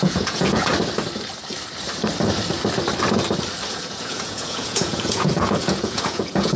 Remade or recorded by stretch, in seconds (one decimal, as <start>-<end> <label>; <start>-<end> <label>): 0.0-0.7 remade; 0.7-3.7 recorded; 3.7-6.6 remade